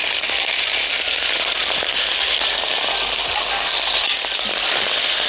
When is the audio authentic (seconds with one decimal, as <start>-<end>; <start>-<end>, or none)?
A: 0.0-5.3